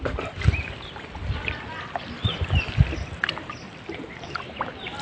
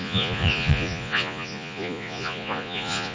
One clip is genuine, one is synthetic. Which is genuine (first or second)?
first